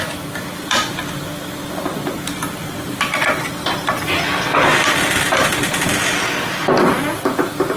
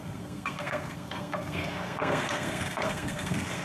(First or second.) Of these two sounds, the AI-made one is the second